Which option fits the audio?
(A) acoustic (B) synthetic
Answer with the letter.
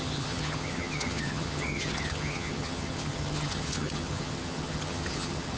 B